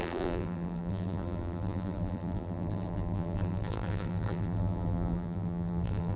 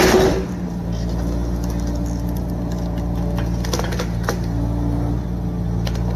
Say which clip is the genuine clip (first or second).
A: second